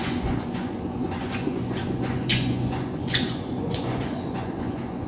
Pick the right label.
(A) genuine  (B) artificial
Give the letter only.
B